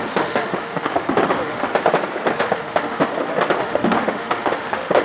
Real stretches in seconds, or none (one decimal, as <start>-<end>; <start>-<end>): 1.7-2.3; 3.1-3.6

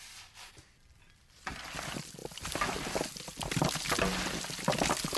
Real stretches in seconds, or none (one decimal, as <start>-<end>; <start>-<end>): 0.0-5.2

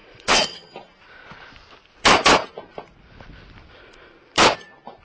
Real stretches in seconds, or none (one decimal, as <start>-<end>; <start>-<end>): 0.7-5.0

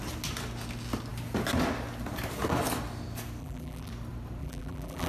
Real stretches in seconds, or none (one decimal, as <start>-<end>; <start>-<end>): 0.0-3.4; 3.9-4.4